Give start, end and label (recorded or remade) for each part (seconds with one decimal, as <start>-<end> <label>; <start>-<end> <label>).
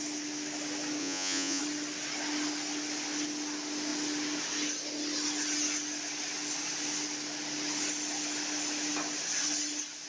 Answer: 0.0-1.0 recorded; 1.0-1.6 remade; 1.6-10.1 recorded